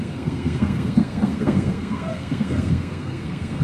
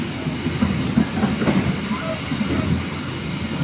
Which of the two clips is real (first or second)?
second